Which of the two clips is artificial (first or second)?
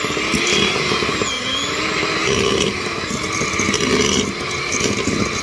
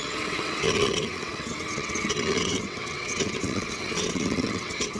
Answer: second